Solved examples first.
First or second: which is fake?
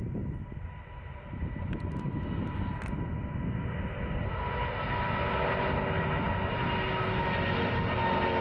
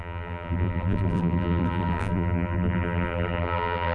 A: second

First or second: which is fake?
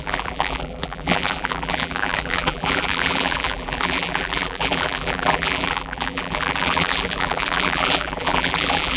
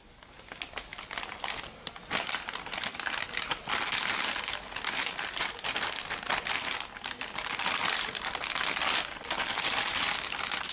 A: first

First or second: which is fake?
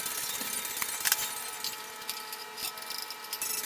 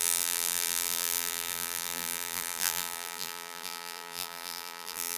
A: second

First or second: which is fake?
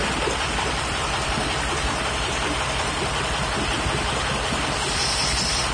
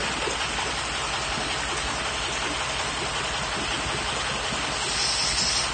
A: first